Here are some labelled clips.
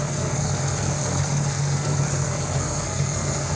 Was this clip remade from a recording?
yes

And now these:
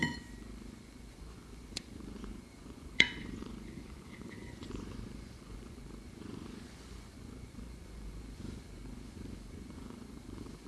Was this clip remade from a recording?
yes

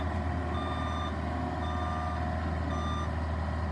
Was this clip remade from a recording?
no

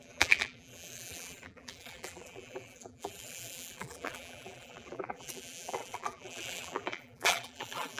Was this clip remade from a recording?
yes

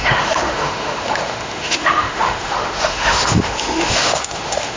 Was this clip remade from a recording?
yes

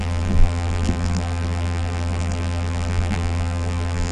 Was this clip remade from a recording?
yes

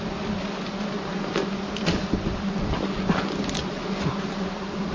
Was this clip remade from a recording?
no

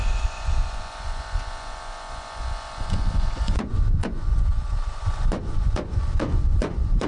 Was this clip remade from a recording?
yes